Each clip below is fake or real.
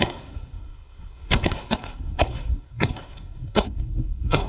fake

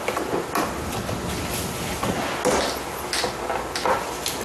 real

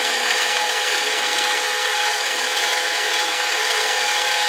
fake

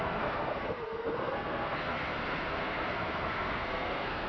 fake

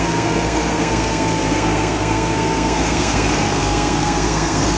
fake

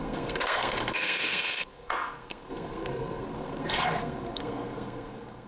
fake